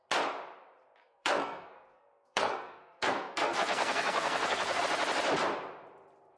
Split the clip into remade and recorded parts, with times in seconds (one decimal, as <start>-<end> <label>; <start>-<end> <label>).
0.0-1.0 recorded; 1.0-4.8 remade; 4.8-6.4 recorded